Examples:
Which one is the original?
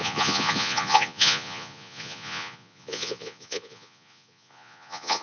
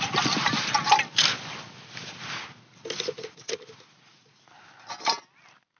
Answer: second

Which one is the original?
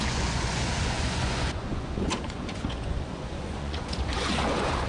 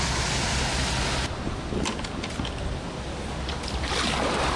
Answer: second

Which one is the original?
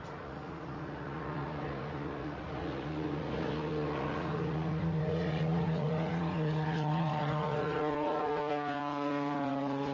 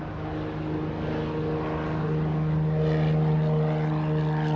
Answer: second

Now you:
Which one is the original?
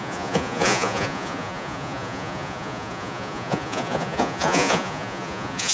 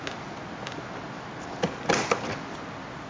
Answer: second